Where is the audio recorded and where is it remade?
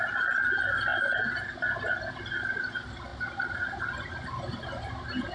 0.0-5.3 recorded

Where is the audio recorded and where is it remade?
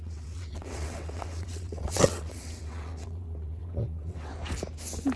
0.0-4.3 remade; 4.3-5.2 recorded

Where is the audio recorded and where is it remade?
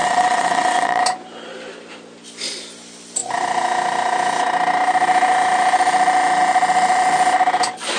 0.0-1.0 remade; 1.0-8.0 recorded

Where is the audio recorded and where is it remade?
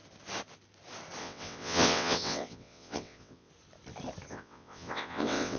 0.0-1.2 recorded; 1.2-3.5 remade; 3.5-4.3 recorded; 4.3-5.6 remade